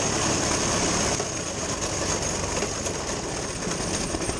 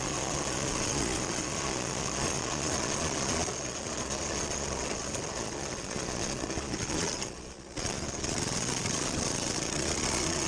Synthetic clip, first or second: second